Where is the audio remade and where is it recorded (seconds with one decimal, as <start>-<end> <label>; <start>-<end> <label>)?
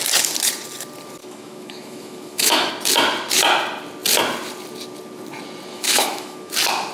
0.0-1.2 recorded; 1.2-2.7 remade; 2.7-5.7 recorded; 5.7-6.5 remade; 6.5-6.9 recorded